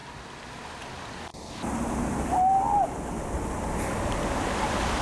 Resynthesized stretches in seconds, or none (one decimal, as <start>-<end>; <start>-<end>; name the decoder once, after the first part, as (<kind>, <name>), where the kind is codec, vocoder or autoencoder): none